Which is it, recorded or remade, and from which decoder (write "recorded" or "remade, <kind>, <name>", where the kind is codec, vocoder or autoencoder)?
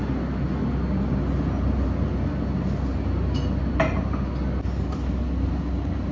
recorded